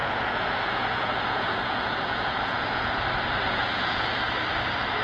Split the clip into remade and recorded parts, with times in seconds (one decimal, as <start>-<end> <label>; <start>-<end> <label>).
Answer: 0.0-2.9 remade; 2.9-3.6 recorded; 3.6-4.3 remade; 4.3-5.0 recorded